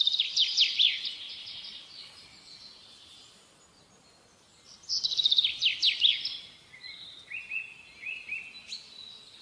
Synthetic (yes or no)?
no